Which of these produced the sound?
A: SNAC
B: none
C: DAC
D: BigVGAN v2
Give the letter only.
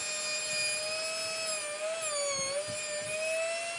B